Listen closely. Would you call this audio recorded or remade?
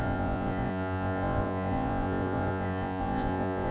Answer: remade